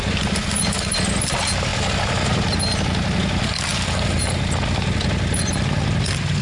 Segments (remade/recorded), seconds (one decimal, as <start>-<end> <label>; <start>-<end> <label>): 0.0-6.4 recorded